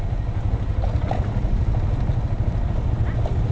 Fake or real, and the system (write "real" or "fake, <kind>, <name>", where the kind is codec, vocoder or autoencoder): real